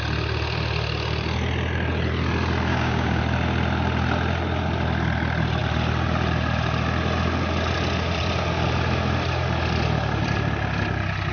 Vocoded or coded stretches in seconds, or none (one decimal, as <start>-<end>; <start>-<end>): 2.7-3.2